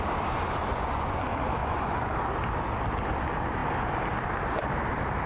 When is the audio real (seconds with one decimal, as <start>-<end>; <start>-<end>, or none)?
0.0-0.7; 1.2-1.6; 2.1-5.3